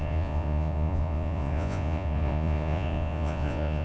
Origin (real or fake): fake